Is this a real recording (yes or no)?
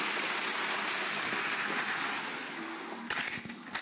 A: yes